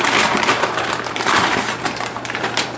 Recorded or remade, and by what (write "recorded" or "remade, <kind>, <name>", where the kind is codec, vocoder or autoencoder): remade, vocoder, BigVGAN v2